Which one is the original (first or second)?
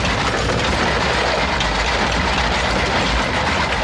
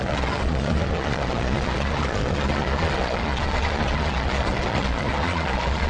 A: first